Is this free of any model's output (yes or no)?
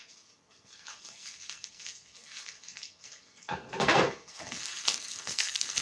no